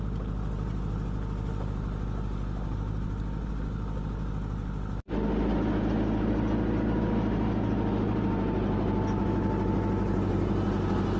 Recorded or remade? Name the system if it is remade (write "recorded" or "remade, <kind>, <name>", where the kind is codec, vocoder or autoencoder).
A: recorded